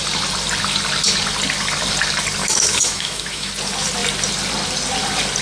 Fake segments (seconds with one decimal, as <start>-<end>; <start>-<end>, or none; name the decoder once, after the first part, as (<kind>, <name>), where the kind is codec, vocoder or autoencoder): 2.4-3.5 (autoencoder, DAC-VAE)